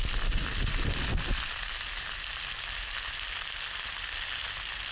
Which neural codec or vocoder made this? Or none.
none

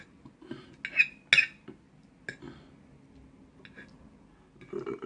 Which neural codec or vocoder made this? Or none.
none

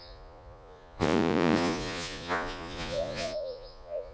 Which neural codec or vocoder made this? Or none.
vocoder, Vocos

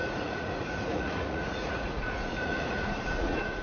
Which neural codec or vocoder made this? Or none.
vocoder, Vocos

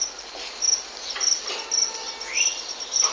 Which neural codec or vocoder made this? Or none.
none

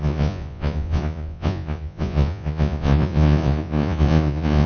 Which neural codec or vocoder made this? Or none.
vocoder, Vocos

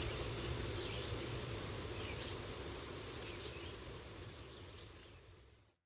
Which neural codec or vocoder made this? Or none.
vocoder, Vocos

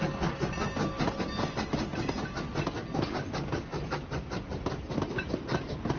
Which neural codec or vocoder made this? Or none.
none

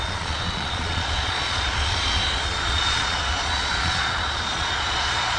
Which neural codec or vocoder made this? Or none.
vocoder, Vocos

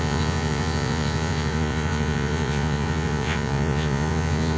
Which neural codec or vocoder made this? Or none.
vocoder, Vocos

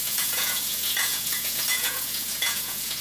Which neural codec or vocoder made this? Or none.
vocoder, Vocos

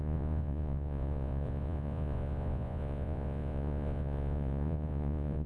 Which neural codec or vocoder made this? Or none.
vocoder, Vocos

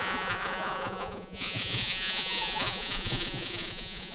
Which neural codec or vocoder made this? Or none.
vocoder, Vocos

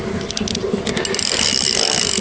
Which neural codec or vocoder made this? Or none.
none